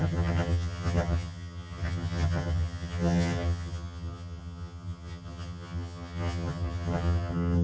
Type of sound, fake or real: fake